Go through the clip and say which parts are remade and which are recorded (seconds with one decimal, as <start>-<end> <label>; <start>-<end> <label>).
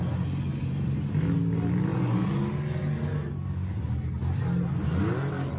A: 0.0-0.5 recorded; 0.5-1.0 remade; 1.0-5.6 recorded